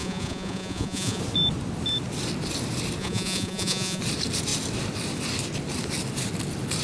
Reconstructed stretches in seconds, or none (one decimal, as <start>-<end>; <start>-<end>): 0.0-1.2; 3.0-4.0